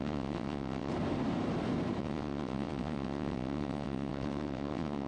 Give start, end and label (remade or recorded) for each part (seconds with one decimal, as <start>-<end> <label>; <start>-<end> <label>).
0.0-0.9 remade; 0.9-2.0 recorded; 2.0-5.1 remade